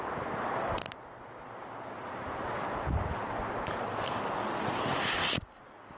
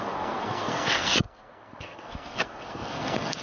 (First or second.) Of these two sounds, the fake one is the second